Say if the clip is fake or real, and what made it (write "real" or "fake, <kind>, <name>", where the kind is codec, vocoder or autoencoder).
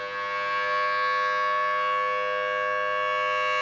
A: real